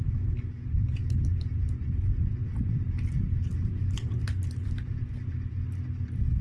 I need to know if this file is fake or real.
real